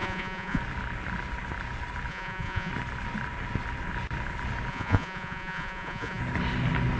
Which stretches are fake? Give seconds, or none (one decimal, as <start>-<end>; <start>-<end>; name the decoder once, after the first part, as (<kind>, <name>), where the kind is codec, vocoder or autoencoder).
0.0-0.6 (vocoder, Vocos); 2.1-2.7; 4.7-6.2